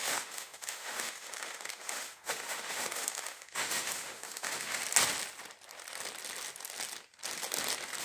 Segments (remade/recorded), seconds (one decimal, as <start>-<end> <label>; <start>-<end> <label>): 0.0-4.8 remade; 4.8-8.0 recorded